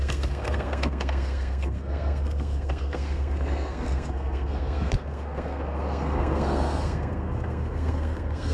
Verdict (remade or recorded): remade